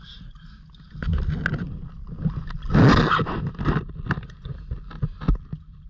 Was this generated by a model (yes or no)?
no